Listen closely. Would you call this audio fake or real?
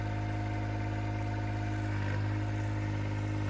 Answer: real